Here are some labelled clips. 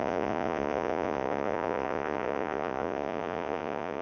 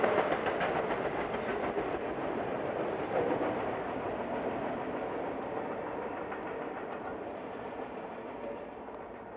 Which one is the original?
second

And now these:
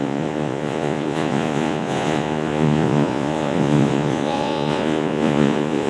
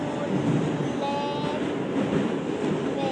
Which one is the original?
second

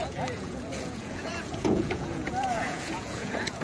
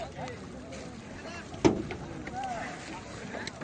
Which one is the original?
second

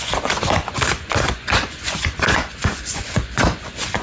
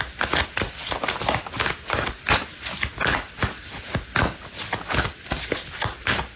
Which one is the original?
second